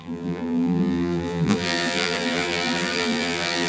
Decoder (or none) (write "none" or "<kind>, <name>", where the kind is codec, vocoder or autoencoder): vocoder, BigVGAN v2